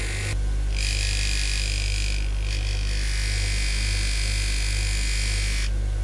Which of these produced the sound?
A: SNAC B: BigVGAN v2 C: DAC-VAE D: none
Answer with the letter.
D